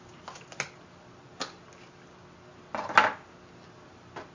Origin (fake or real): real